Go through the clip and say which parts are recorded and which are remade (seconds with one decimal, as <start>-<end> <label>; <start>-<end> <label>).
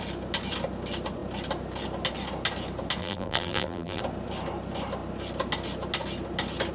0.0-3.0 recorded; 3.0-4.0 remade; 4.0-6.7 recorded